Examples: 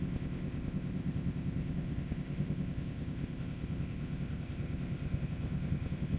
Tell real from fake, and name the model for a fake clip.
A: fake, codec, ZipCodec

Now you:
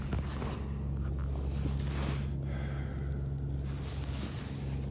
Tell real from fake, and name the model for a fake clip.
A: real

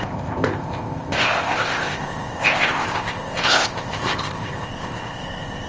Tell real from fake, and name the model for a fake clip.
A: fake, codec, ZipCodec